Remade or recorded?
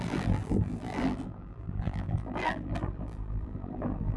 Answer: remade